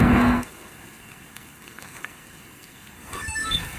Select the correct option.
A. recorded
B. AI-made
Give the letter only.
B